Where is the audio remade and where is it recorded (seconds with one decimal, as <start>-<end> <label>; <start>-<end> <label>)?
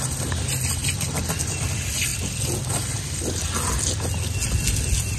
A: 0.0-0.8 remade; 0.8-1.4 recorded; 1.4-2.1 remade; 2.1-5.2 recorded